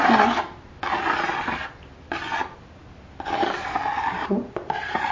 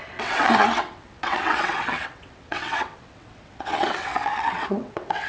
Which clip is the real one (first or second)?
first